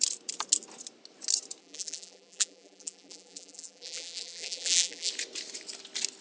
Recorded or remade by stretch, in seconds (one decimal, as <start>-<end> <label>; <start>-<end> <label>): 0.0-1.6 recorded; 1.6-5.1 remade; 5.1-6.2 recorded